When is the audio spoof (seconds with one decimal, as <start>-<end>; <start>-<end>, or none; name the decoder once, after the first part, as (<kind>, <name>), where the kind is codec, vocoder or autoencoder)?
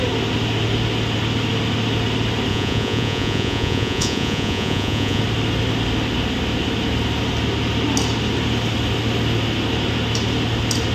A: 2.5-5.2 (vocoder, Vocos)